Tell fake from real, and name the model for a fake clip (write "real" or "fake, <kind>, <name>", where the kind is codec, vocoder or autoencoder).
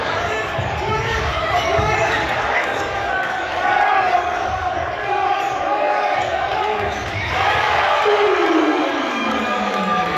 fake, codec, DAC